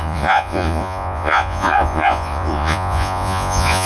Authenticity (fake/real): fake